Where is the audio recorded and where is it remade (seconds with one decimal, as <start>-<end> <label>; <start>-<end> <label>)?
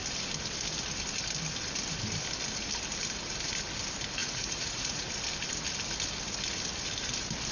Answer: 0.0-4.2 recorded; 4.2-5.1 remade; 5.1-7.5 recorded